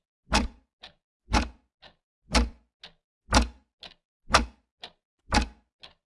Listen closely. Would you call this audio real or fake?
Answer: real